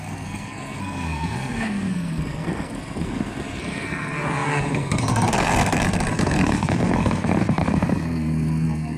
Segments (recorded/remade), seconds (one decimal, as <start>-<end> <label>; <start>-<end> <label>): 0.0-9.0 remade